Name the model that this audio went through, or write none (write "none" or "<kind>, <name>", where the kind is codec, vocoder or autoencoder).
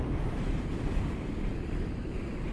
vocoder, BigVGAN v2